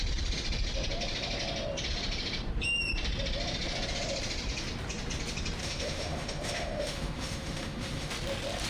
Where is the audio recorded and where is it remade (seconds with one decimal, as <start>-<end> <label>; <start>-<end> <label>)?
0.0-5.6 recorded; 5.6-8.1 remade; 8.1-8.7 recorded